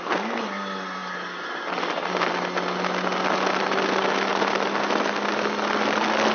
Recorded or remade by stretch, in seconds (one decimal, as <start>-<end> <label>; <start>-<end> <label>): 0.0-6.3 recorded